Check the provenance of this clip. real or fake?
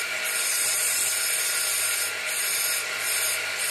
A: real